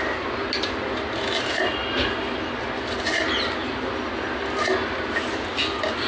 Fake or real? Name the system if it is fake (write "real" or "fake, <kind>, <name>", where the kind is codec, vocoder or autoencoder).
real